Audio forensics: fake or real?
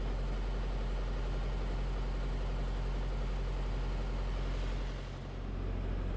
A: real